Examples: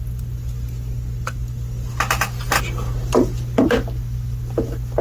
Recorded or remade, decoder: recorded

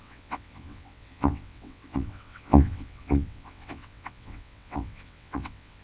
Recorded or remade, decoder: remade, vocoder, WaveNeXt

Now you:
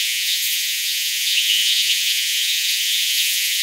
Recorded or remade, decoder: remade, vocoder, Vocos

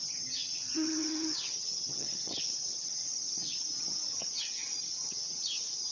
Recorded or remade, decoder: remade, vocoder, HiFi-GAN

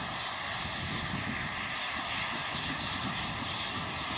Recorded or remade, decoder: recorded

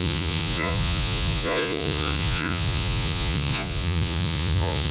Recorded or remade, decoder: remade, vocoder, Vocos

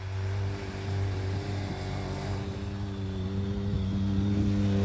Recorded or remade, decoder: recorded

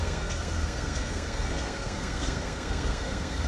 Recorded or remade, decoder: remade, codec, SNAC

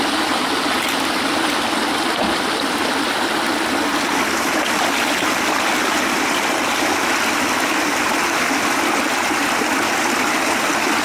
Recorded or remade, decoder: recorded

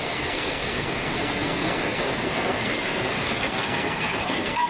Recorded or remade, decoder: remade, codec, SNAC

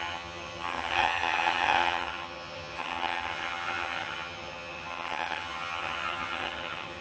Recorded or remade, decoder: remade, vocoder, HiFi-GAN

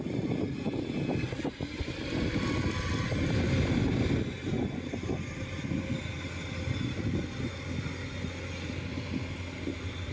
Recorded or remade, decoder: recorded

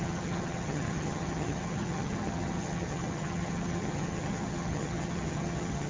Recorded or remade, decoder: remade, vocoder, HiFi-GAN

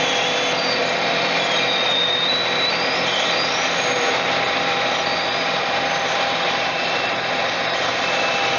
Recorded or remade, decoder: remade, vocoder, BigVGAN v2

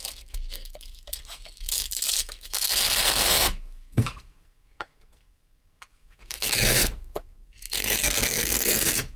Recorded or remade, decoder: remade, codec, SNAC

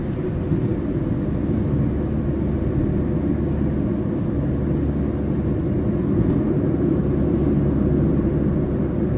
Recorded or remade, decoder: recorded